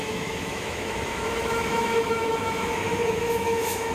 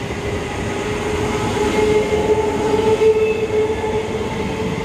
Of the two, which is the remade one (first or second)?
first